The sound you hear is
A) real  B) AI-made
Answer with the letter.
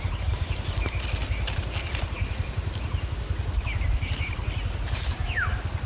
A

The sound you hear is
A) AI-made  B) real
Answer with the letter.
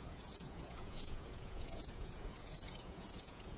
A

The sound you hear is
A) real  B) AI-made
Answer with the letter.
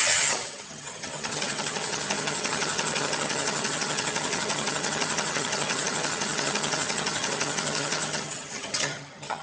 B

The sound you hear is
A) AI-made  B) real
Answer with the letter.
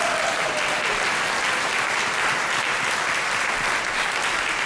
B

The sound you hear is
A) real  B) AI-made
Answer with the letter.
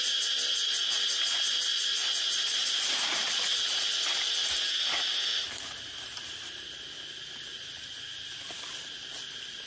A